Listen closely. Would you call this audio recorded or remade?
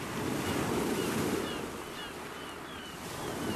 recorded